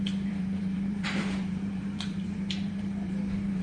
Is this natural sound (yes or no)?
no